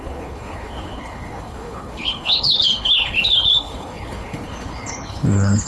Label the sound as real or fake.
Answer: fake